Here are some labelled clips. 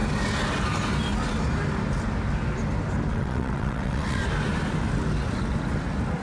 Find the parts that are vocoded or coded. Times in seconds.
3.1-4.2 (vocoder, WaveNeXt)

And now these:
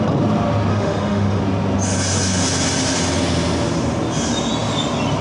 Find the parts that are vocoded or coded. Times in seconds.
0.7-1.4 (autoencoder, DAC-VAE)

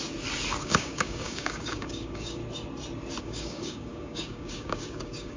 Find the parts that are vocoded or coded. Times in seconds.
0.6-2.4 (codec, DAC); 3.2-5.4

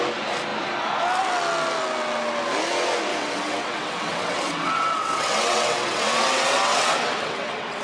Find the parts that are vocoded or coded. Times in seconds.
3.1-7.8 (vocoder, WaveNeXt)

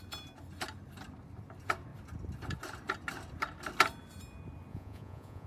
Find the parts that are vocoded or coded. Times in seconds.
4.7-5.5 (vocoder, Vocos)

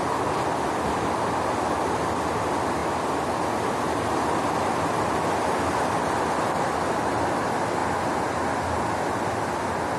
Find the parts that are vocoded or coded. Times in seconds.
none

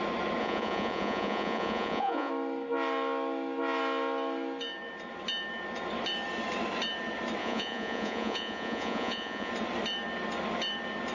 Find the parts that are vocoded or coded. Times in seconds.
0.4-2.3 (vocoder, Vocos); 7.4-9.5